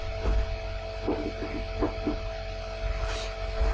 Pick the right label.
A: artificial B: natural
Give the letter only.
B